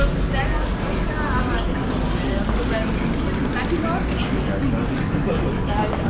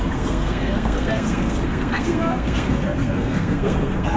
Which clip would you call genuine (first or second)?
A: first